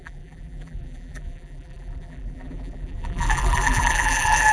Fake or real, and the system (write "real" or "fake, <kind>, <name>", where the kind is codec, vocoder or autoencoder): fake, vocoder, BigVGAN v2